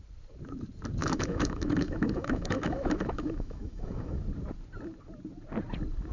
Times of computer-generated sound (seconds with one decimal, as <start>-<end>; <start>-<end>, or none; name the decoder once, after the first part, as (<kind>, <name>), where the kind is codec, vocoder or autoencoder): 1.0-4.2 (autoencoder, DAC-VAE)